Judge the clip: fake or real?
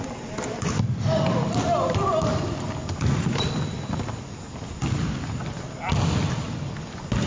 real